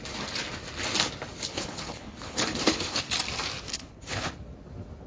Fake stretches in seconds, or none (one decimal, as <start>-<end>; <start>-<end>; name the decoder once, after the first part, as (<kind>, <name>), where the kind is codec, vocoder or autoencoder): 1.5-3.0 (codec, HILCodec); 3.7-4.4